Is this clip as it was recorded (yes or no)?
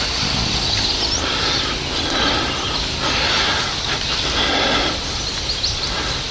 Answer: yes